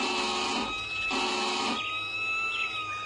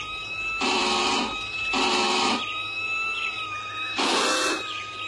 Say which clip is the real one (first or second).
first